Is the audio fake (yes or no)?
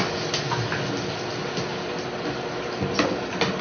no